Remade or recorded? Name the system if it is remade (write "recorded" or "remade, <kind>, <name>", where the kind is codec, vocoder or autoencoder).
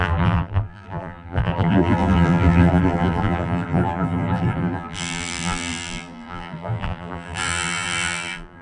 remade, vocoder, BigVGAN v2